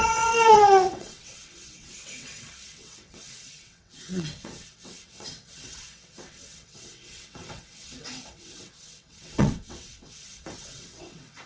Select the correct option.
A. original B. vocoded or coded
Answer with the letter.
B